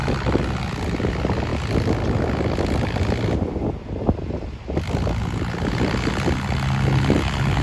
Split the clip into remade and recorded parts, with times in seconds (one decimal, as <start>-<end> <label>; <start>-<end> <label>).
0.0-7.6 recorded

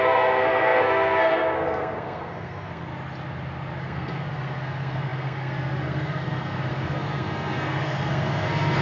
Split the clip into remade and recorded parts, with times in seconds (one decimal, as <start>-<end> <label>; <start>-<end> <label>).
0.0-2.9 remade; 2.9-3.8 recorded; 3.8-8.8 remade

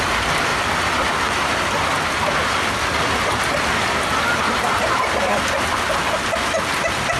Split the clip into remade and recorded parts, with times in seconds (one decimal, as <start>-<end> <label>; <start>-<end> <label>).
0.0-0.5 remade; 0.5-2.7 recorded; 2.7-7.2 remade

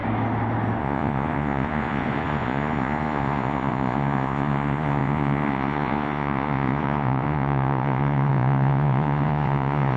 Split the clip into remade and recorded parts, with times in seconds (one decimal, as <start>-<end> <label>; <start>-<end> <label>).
0.0-0.8 recorded; 0.8-10.0 remade